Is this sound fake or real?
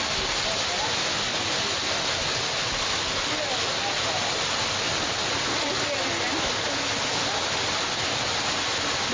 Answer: real